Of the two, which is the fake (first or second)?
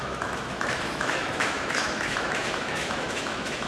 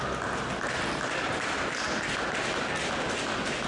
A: first